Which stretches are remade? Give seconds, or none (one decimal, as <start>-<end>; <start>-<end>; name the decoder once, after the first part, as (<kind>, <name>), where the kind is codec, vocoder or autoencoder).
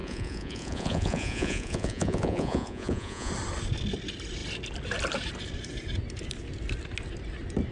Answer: 0.0-3.3 (vocoder, Vocos)